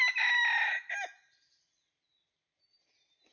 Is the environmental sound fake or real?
real